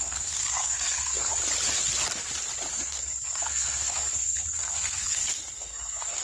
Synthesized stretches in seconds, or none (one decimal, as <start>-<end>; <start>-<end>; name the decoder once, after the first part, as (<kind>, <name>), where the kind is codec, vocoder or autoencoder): 0.0-1.3 (codec, SNAC); 2.7-6.2